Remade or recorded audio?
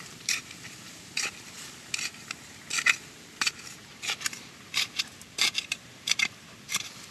remade